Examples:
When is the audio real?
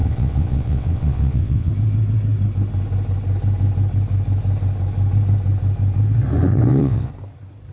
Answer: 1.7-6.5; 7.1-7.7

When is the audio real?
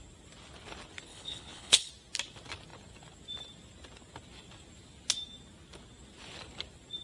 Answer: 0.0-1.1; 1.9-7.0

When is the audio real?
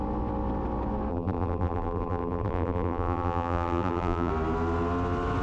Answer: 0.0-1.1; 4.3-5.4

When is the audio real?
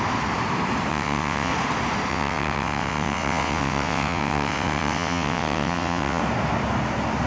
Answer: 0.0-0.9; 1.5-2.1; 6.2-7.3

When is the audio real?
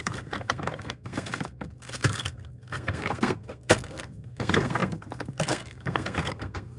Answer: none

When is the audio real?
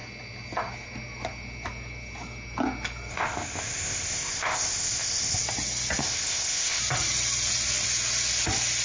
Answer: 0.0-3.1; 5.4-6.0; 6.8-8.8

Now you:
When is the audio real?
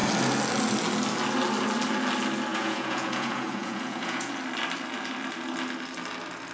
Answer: 0.0-2.5; 4.3-6.5